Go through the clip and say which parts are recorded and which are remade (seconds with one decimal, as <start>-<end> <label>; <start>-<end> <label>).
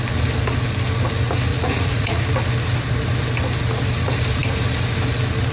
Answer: 0.0-1.5 recorded; 1.5-2.2 remade; 2.2-5.5 recorded